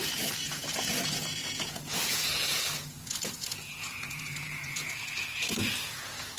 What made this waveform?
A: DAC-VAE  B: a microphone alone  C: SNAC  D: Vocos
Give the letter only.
D